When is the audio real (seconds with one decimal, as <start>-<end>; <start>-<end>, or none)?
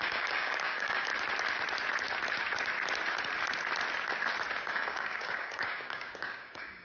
1.1-4.6